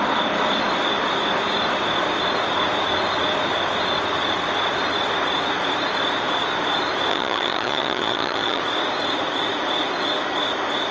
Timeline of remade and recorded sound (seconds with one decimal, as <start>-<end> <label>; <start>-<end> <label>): 0.0-7.1 recorded; 7.1-8.6 remade; 8.6-10.9 recorded